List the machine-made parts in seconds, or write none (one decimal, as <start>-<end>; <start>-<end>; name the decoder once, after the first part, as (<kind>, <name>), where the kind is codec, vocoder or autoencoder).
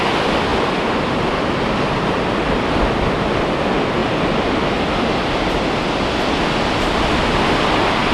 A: none